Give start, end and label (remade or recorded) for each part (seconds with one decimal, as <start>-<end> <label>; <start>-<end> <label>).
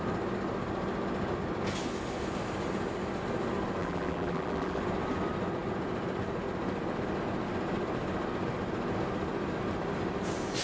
0.0-3.8 recorded; 3.8-4.8 remade; 4.8-10.6 recorded